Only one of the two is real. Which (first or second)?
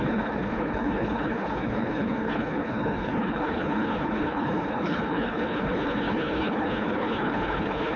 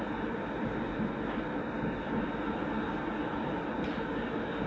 second